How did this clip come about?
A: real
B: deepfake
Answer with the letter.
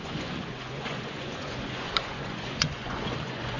B